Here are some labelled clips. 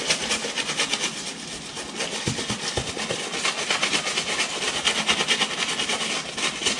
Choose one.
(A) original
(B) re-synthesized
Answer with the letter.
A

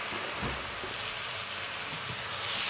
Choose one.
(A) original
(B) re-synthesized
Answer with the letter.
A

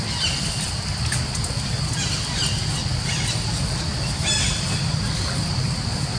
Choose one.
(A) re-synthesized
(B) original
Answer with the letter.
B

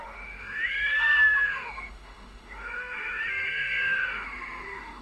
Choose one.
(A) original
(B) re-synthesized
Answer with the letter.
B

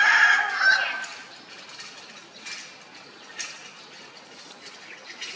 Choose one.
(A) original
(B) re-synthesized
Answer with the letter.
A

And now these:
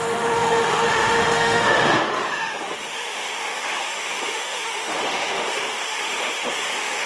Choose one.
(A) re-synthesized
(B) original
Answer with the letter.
A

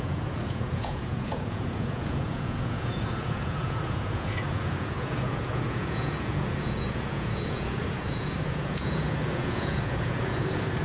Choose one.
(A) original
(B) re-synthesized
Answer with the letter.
B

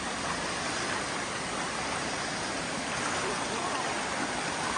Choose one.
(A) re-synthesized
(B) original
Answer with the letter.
B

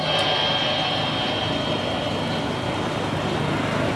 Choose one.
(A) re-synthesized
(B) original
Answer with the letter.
B